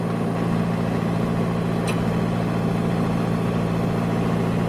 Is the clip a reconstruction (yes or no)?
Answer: no